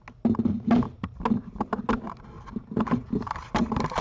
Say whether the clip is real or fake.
real